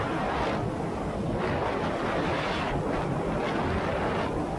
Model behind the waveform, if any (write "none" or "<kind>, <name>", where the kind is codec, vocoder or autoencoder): none